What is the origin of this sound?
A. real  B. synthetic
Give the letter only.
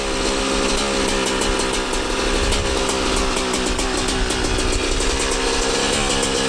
A